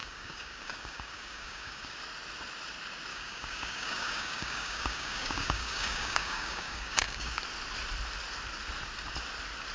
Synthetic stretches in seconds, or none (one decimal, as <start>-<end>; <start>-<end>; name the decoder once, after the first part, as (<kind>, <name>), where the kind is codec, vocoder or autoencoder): 0.0-2.0 (codec, DAC); 3.1-7.4